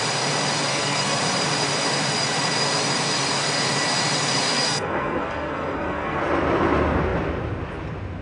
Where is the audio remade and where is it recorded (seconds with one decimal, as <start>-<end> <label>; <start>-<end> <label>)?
0.0-0.7 recorded; 0.7-1.2 remade; 1.2-4.5 recorded; 4.5-6.2 remade; 6.2-8.2 recorded